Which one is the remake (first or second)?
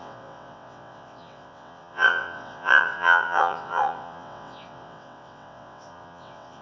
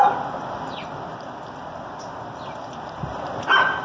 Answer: first